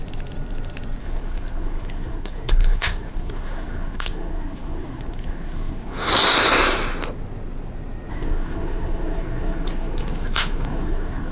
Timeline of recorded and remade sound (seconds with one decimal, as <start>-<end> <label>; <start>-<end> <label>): 0.0-1.0 recorded; 1.0-6.1 remade; 6.1-8.1 recorded; 8.1-11.3 remade